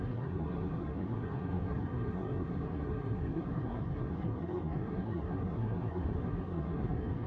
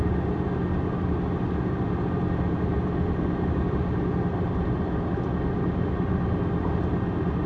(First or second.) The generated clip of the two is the first